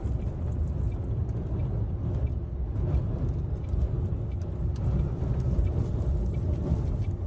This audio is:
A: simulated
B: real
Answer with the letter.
B